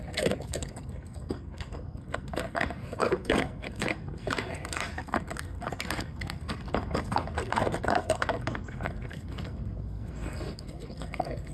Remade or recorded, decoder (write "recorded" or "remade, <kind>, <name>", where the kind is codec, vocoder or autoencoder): remade, codec, SNAC